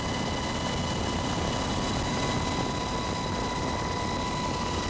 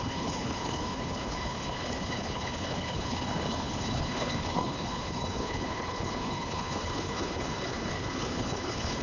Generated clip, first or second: second